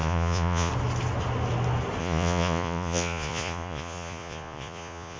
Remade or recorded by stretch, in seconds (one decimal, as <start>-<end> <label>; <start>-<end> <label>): 0.0-0.7 remade; 0.7-2.0 recorded; 2.0-5.2 remade